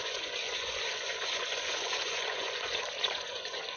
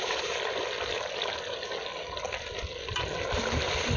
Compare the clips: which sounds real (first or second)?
second